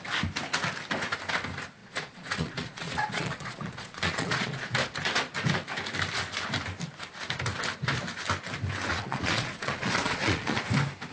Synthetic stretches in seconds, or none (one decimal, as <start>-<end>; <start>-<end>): 1.8-4.7; 8.9-10.6